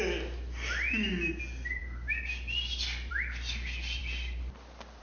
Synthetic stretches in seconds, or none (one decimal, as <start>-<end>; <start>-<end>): none